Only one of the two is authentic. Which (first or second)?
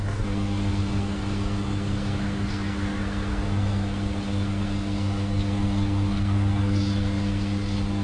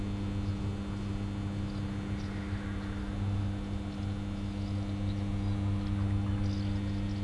second